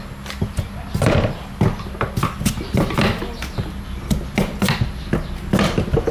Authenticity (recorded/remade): recorded